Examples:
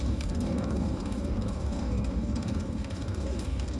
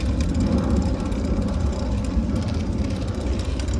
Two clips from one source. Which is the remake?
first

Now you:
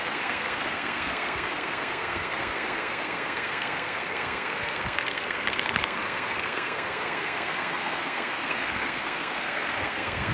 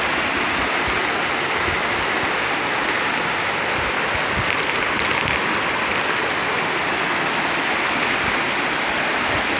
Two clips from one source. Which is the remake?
first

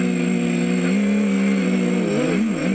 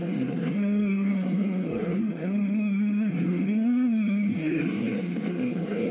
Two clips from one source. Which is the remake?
second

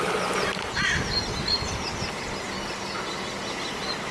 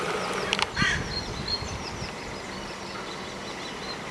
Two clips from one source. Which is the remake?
second